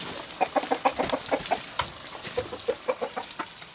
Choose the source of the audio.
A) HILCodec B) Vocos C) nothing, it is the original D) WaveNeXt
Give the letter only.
C